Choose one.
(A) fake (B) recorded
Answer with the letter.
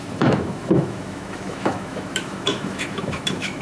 A